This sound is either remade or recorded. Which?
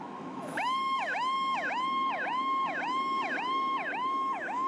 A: remade